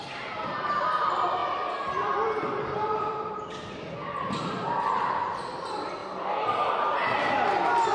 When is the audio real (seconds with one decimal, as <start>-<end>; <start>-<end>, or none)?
0.0-1.4; 4.7-7.9